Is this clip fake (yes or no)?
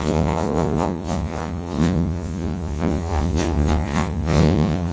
yes